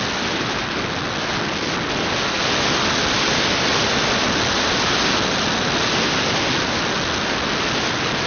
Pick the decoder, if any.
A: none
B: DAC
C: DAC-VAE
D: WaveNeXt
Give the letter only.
A